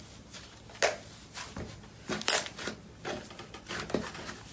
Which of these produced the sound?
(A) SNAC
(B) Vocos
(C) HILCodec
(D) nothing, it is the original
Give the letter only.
D